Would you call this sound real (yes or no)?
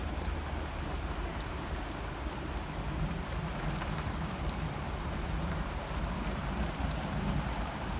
no